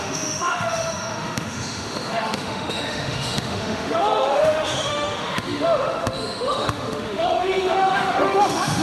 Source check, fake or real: fake